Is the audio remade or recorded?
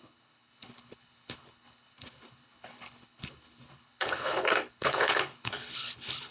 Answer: remade